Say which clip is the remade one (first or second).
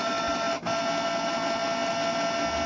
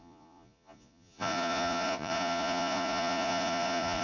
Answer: second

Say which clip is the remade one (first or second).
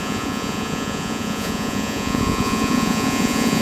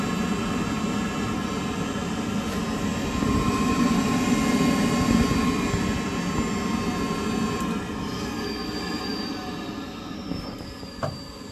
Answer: first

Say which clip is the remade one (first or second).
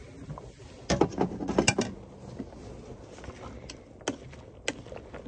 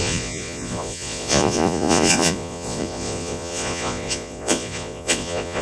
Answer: second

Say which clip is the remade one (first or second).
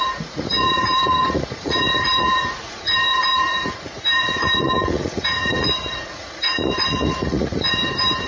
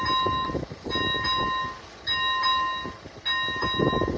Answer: first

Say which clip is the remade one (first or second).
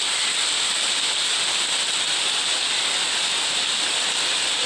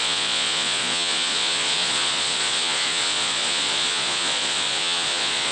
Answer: second